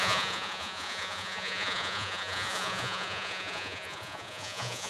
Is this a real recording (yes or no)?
no